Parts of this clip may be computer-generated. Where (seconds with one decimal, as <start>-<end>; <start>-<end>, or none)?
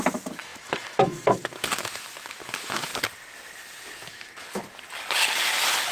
0.0-2.9; 4.1-4.6